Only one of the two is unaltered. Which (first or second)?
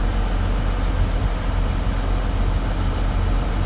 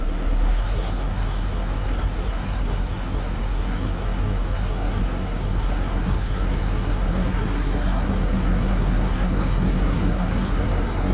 first